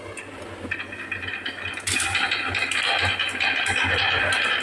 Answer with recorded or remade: recorded